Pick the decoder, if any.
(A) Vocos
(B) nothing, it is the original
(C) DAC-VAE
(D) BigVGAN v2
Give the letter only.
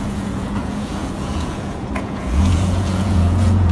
A